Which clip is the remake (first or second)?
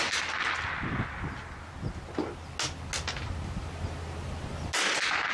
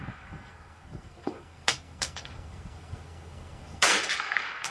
second